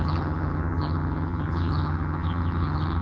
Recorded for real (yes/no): no